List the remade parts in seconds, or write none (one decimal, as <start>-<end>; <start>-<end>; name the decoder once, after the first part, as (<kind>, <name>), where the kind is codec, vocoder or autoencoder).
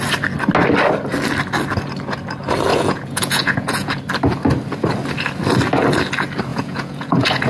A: 2.7-4.0 (vocoder, Vocos); 6.5-7.5